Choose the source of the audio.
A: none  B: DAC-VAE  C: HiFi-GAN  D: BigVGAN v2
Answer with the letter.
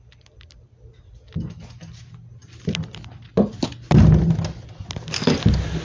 A